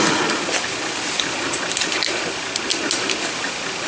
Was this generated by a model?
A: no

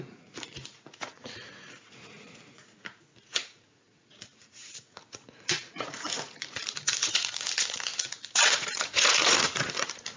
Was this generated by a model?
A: yes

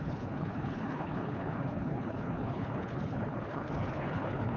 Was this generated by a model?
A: yes